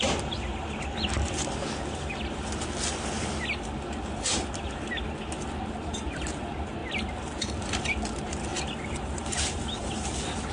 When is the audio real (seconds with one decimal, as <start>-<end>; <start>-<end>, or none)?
0.0-10.5